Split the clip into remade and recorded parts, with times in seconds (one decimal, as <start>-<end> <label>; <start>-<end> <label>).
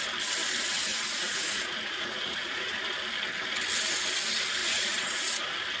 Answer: 0.0-0.9 recorded; 0.9-2.7 remade; 2.7-4.6 recorded; 4.6-5.2 remade; 5.2-5.8 recorded